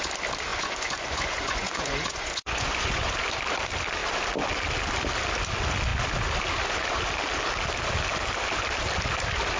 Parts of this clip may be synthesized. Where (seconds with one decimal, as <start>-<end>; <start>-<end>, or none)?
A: 0.5-3.1

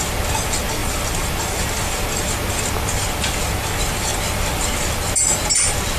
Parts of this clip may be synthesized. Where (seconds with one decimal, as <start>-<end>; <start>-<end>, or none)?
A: none

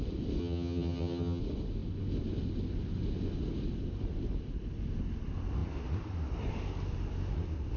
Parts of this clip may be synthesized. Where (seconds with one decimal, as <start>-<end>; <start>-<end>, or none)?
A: 0.4-1.4

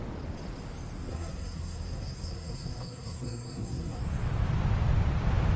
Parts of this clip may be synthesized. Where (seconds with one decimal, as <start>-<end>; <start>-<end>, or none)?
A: 1.1-4.0

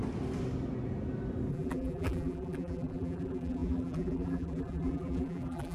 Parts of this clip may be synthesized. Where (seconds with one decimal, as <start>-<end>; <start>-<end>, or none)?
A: 1.5-5.7

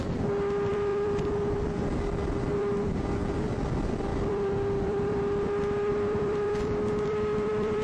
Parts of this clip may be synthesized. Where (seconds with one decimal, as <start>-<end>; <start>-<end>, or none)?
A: 0.0-7.8

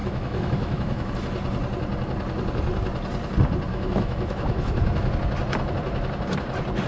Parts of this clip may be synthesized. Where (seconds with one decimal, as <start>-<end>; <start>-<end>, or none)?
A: 0.0-1.1; 3.7-5.1